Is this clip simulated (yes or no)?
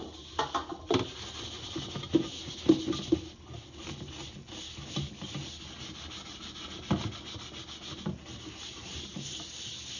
no